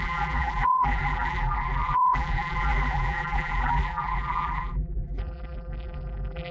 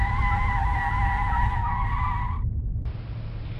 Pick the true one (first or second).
second